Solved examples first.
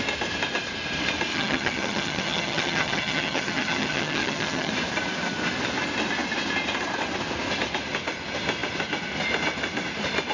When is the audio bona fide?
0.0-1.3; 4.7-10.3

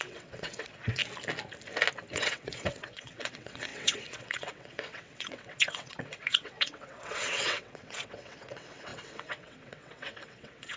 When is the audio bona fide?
1.0-2.1

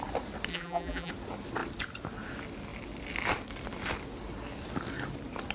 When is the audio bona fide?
0.0-0.5; 1.1-5.5

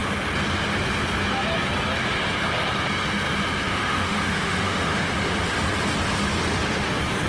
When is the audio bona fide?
0.0-3.7; 5.1-7.3